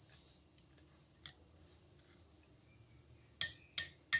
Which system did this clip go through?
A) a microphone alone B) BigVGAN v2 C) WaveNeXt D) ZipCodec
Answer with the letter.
A